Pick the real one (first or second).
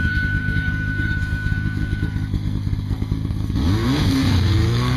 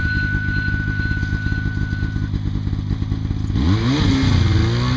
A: second